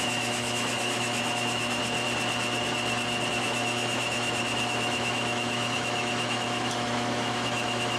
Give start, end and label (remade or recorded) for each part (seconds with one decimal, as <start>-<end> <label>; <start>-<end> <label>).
0.0-1.8 remade; 1.8-3.3 recorded; 3.3-8.0 remade